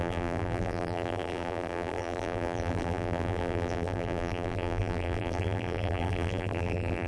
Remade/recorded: remade